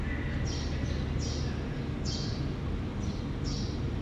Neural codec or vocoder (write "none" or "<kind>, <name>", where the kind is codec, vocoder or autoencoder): none